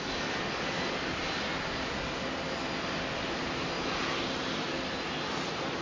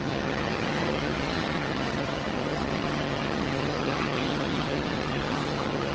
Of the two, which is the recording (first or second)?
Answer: first